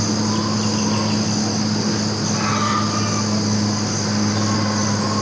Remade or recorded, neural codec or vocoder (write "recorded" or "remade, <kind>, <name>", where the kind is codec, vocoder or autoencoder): recorded